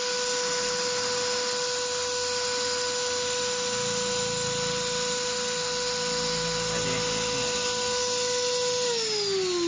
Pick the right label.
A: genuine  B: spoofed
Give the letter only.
A